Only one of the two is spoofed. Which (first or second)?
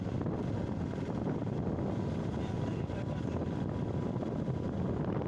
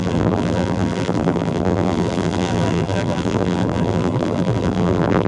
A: second